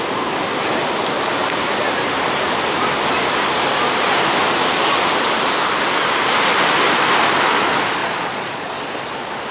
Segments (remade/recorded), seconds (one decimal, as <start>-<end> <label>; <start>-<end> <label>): 0.0-8.0 recorded; 8.0-8.7 remade; 8.7-9.5 recorded